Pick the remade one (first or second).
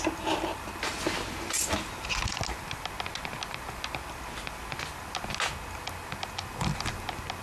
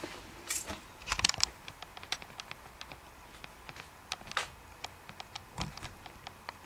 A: second